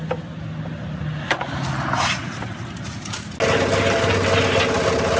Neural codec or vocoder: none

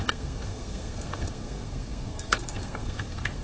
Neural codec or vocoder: codec, SNAC